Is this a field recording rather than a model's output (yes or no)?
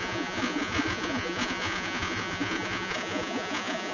no